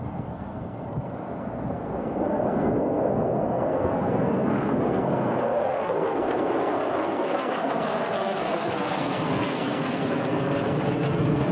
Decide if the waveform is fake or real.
fake